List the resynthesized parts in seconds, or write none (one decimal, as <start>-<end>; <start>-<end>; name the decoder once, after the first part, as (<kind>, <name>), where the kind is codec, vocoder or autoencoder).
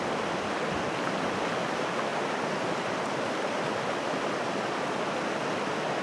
2.1-4.2 (vocoder, BigVGAN v2)